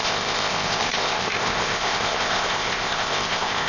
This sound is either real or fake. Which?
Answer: fake